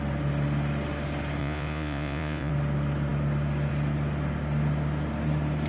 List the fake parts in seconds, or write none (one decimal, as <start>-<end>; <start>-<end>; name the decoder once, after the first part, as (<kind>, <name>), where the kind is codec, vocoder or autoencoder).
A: 1.4-2.5 (vocoder, Vocos)